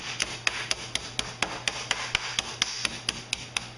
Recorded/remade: recorded